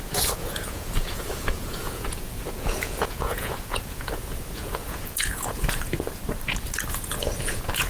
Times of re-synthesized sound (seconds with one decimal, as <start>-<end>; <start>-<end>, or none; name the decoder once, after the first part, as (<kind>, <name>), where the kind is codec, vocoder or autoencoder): 0.0-6.2 (vocoder, Vocos); 6.9-7.9